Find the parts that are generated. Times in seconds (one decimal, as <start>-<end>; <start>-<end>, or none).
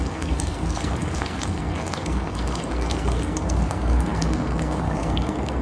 0.0-5.6